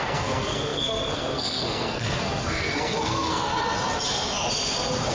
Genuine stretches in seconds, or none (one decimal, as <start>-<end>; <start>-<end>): 3.5-5.1